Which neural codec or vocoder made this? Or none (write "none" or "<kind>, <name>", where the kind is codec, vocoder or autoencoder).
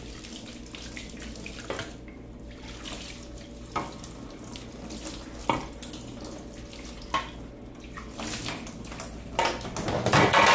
none